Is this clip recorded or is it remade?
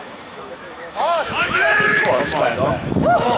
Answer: remade